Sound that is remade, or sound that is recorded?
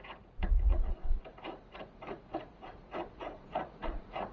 remade